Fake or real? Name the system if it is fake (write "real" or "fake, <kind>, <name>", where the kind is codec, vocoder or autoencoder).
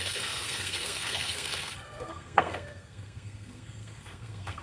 fake, codec, SNAC